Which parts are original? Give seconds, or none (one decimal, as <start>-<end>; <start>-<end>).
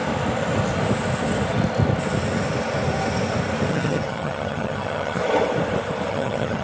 0.0-3.7; 5.2-6.1